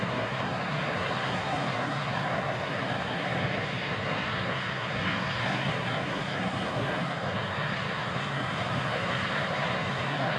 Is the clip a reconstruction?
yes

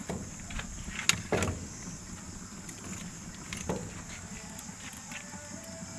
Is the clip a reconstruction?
no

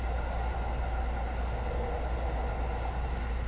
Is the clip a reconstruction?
no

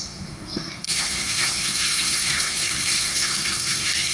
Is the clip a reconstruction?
yes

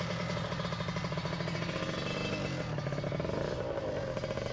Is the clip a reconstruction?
no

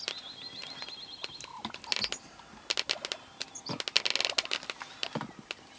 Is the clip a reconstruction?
no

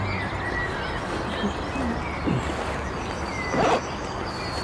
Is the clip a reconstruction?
no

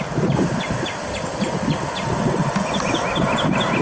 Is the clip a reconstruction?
no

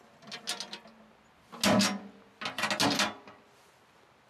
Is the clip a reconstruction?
no